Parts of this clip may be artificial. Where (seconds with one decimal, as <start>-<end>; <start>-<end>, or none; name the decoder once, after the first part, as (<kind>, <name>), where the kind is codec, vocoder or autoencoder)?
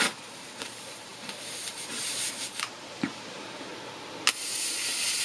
0.0-3.7 (vocoder, BigVGAN v2)